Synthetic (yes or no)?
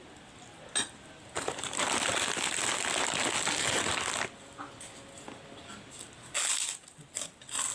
no